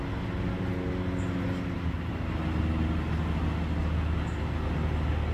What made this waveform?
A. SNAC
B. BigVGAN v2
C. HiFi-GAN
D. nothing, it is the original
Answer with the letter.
D